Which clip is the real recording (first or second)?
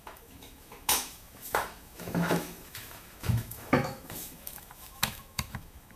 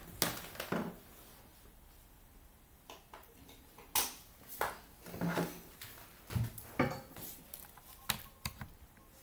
second